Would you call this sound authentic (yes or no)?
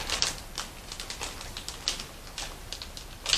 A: yes